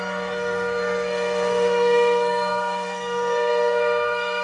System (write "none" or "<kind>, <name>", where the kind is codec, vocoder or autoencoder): codec, SNAC